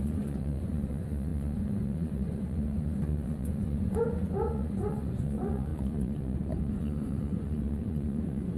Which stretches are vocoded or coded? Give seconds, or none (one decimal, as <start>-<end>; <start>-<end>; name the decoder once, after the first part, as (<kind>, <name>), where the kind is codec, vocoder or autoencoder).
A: 0.0-8.6 (vocoder, Vocos)